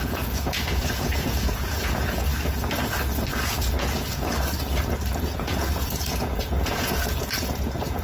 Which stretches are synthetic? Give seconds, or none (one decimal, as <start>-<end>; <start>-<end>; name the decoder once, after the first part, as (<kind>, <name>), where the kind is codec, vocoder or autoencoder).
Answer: 0.0-2.3 (vocoder, Vocos); 3.3-4.3; 5.2-8.0